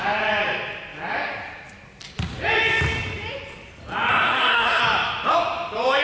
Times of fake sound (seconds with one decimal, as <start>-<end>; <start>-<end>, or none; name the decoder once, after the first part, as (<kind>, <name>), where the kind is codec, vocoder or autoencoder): 4.1-4.8 (codec, SNAC)